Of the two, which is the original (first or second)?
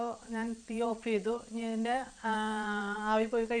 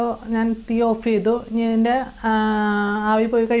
second